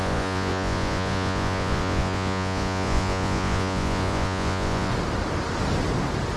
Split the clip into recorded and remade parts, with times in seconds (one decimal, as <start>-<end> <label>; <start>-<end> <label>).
0.0-4.9 remade; 4.9-6.4 recorded